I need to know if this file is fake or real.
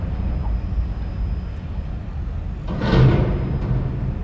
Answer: real